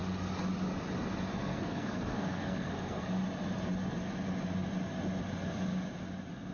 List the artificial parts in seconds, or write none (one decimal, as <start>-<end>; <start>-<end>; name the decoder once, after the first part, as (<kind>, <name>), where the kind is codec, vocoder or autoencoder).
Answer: 1.3-3.1 (codec, SNAC)